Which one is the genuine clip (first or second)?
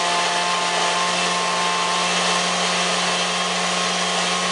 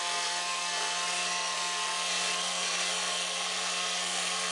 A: first